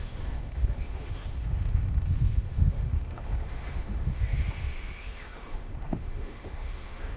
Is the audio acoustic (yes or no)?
no